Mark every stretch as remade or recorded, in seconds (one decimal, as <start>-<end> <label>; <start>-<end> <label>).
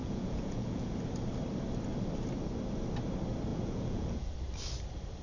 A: 0.0-0.9 remade; 0.9-3.5 recorded; 3.5-4.3 remade; 4.3-5.2 recorded